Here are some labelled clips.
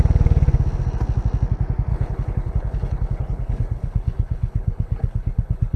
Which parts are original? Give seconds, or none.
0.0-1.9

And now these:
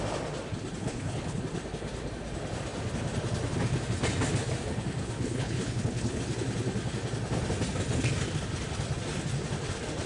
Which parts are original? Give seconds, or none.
0.0-0.8; 1.4-5.0; 6.2-10.1

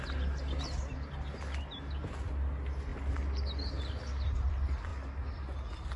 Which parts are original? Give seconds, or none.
0.0-6.0

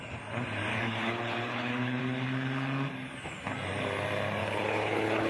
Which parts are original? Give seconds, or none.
0.0-0.7; 2.0-4.4

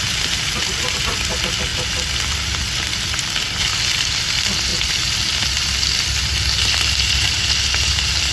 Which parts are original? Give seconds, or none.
0.0-8.3

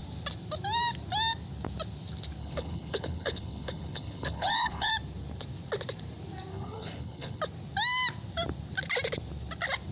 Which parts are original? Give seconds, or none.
0.0-2.4; 4.9-6.5; 7.4-9.9